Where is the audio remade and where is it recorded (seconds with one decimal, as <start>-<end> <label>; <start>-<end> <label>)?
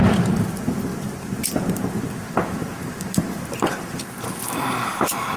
0.0-5.4 recorded